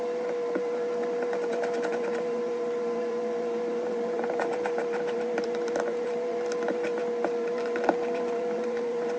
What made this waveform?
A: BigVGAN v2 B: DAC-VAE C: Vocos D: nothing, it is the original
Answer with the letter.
A